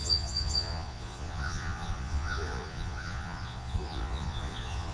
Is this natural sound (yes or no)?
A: no